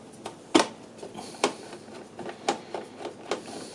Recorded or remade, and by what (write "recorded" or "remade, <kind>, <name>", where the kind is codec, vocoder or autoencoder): recorded